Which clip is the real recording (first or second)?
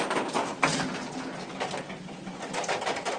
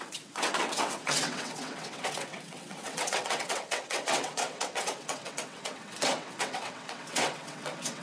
first